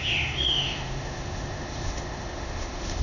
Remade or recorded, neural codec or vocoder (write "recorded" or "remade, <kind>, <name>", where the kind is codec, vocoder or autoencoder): remade, autoencoder, DAC-VAE